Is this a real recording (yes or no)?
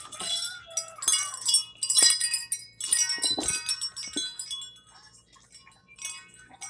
yes